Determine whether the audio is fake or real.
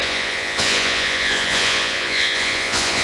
fake